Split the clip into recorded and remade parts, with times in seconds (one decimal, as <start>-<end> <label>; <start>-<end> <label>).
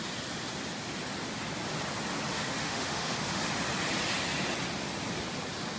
0.0-2.3 recorded; 2.3-3.4 remade; 3.4-5.8 recorded